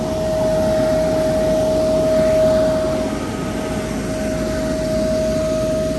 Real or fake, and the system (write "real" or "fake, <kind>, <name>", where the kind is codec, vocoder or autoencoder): real